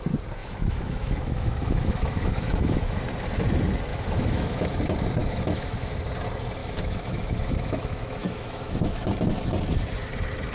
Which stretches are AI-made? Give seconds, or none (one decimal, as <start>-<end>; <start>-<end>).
0.4-3.0; 3.9-4.8; 5.2-5.9; 6.6-9.0